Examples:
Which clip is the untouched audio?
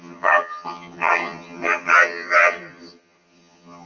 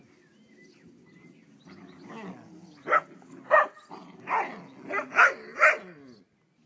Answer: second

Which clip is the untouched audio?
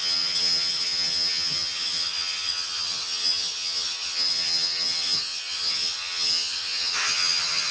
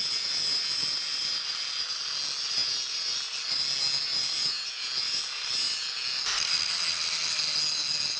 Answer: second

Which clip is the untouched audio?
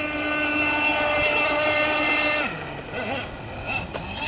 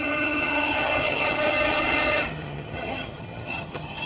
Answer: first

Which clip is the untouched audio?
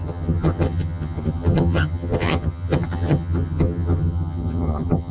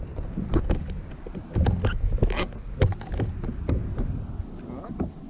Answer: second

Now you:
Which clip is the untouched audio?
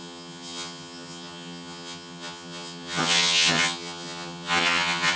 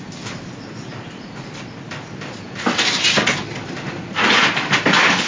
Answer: second